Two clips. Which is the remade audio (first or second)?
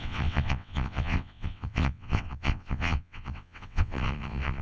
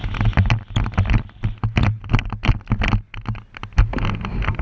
first